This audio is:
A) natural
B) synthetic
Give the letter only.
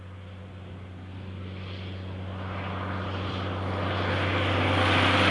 A